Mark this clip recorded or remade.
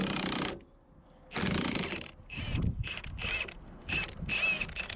recorded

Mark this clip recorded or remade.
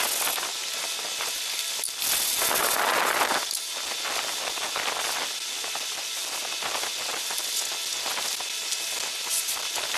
recorded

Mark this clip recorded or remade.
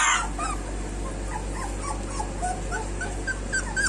recorded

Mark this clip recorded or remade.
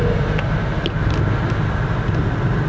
recorded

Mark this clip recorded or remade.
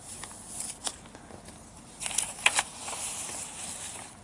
recorded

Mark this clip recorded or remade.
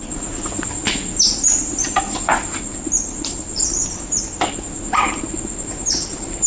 recorded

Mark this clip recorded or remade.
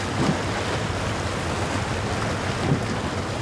recorded